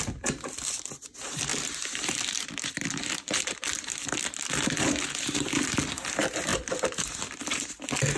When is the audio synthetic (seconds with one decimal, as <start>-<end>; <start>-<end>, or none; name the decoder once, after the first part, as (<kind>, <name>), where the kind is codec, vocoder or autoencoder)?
1.5-5.0 (vocoder, BigVGAN v2); 6.5-7.7